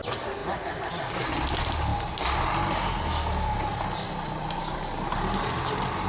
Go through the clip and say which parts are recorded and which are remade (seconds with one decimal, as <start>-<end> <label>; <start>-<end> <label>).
0.0-6.1 recorded